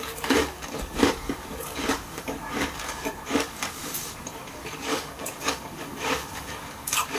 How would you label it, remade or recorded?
remade